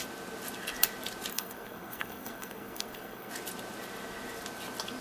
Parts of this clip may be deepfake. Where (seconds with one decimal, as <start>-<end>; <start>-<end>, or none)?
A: 1.3-3.3